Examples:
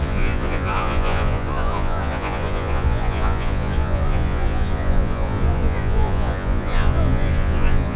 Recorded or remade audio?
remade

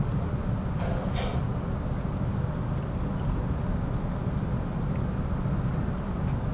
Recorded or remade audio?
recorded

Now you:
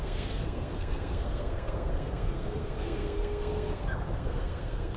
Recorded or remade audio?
remade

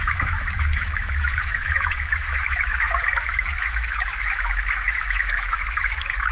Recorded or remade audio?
remade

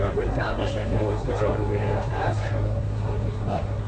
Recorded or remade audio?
remade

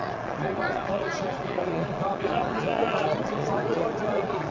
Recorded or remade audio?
remade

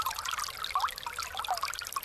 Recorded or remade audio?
recorded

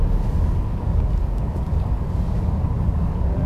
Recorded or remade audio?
remade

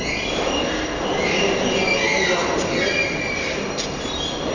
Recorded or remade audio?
recorded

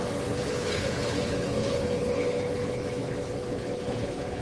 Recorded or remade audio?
remade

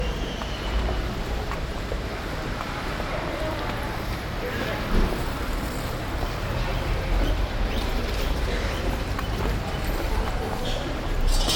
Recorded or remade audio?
remade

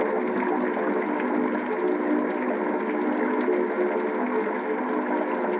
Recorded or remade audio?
recorded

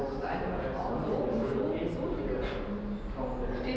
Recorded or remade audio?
recorded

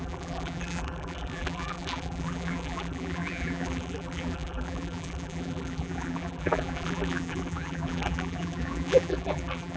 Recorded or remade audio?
remade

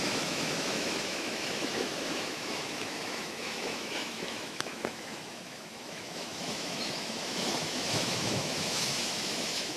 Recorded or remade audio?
remade